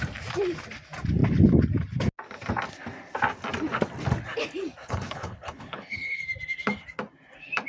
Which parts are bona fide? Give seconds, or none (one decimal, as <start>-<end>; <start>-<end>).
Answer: 0.0-4.8; 6.2-7.7